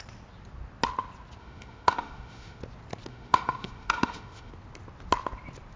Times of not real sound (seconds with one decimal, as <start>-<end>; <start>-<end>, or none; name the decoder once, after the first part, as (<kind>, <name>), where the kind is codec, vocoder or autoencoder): 1.4-2.6 (autoencoder, DAC-VAE); 3.1-4.5